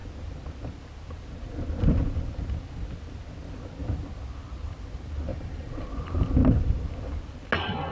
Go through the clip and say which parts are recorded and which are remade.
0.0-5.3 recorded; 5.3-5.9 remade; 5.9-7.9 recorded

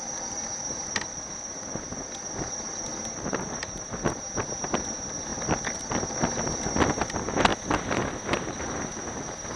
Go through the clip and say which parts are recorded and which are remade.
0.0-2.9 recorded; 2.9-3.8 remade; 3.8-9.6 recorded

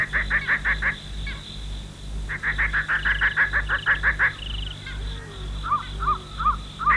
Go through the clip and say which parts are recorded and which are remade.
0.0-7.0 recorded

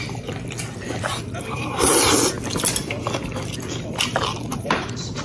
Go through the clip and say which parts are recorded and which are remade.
0.0-1.1 recorded; 1.1-1.9 remade; 1.9-4.5 recorded; 4.5-5.2 remade

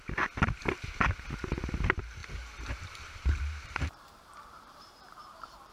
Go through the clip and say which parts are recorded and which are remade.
0.0-2.2 recorded; 2.2-5.7 remade

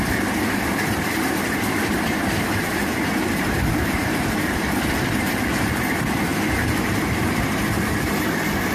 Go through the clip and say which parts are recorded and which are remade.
0.0-6.3 remade; 6.3-7.6 recorded; 7.6-8.7 remade

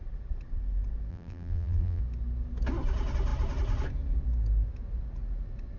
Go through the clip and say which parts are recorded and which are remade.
0.0-1.1 recorded; 1.1-2.0 remade; 2.0-5.8 recorded

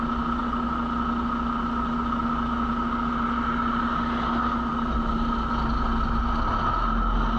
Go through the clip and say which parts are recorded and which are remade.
0.0-7.4 recorded